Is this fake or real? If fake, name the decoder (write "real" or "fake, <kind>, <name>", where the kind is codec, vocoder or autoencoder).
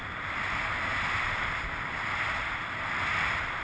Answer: real